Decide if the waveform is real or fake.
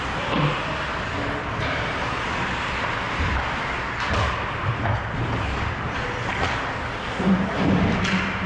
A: real